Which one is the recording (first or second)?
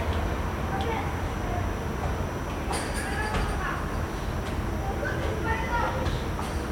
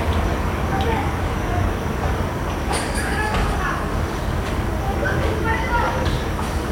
first